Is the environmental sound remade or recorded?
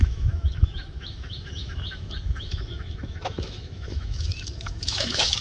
remade